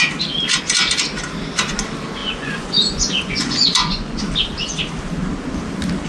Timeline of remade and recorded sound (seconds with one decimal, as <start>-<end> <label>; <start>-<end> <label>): 0.0-2.2 recorded; 2.2-4.2 remade; 4.2-6.1 recorded